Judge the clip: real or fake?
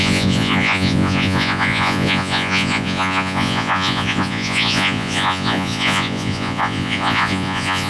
fake